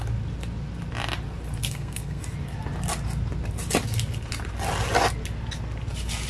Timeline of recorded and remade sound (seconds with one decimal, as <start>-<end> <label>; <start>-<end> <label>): 0.0-1.6 recorded; 1.6-2.2 remade; 2.2-6.3 recorded